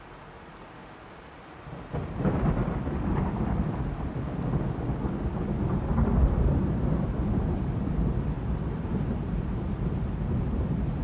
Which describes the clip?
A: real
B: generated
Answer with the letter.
A